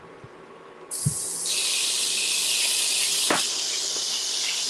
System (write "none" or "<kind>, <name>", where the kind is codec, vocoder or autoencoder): none